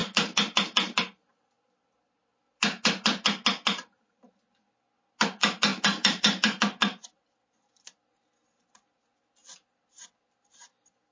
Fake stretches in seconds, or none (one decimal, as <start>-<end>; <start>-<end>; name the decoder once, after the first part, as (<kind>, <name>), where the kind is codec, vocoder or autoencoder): 0.0-1.0 (vocoder, BigVGAN v2); 5.7-6.6